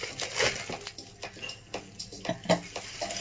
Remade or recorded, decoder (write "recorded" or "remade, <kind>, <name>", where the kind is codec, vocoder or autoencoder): recorded